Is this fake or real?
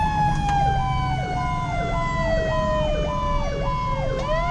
real